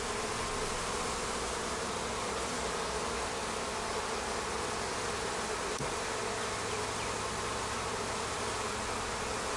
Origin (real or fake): real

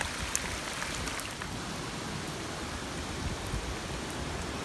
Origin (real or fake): real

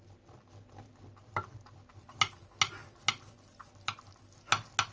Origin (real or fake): real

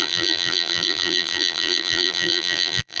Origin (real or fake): fake